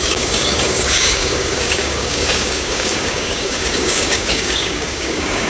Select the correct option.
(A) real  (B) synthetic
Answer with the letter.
B